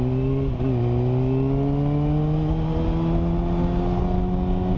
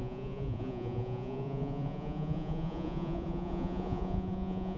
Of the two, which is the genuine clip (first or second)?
first